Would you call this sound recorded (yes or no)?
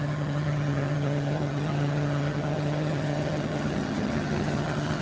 no